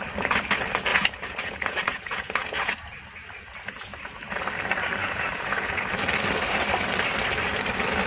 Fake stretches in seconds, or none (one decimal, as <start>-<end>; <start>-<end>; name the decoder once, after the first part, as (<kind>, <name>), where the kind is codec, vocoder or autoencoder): 0.9-2.7 (vocoder, Vocos); 5.0-5.9